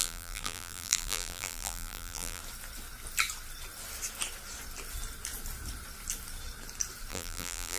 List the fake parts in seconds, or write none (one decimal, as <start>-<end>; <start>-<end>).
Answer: 0.0-2.4; 7.1-7.8

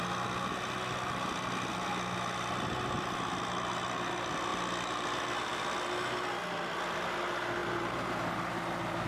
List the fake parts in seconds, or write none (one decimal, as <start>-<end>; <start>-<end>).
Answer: none

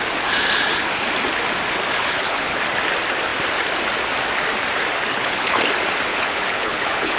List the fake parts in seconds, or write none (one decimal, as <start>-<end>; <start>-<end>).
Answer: 2.0-2.6; 5.1-5.6; 6.1-7.2